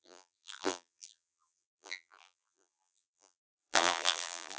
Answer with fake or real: fake